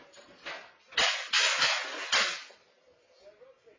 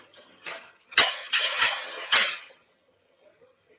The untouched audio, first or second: first